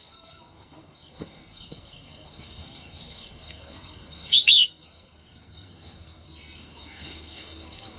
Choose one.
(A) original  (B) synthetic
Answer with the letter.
B